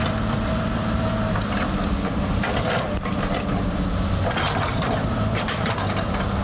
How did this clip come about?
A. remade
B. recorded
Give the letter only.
A